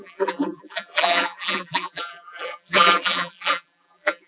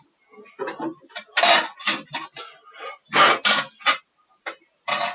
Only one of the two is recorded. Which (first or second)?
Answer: second